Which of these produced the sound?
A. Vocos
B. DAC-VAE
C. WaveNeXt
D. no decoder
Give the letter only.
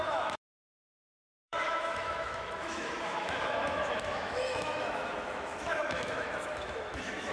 B